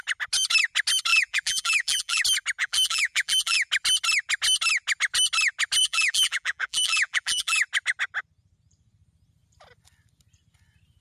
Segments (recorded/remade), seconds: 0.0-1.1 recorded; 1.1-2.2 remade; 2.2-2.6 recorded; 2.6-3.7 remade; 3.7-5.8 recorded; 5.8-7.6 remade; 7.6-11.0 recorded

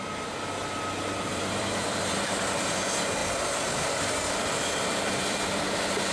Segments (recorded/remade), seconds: 0.0-1.3 recorded; 1.3-2.8 remade; 2.8-3.2 recorded; 3.2-6.1 remade

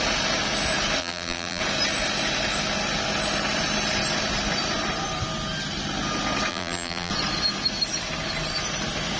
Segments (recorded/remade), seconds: 0.0-1.0 recorded; 1.0-1.6 remade; 1.6-6.5 recorded; 6.5-7.1 remade; 7.1-9.2 recorded